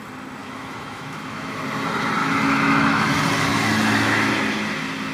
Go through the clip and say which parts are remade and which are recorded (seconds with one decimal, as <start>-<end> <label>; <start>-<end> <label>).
0.0-0.4 recorded; 0.4-1.6 remade; 1.6-2.2 recorded; 2.2-3.1 remade; 3.1-3.5 recorded; 3.5-4.3 remade; 4.3-5.1 recorded